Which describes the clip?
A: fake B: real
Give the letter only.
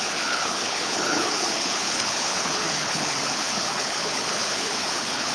A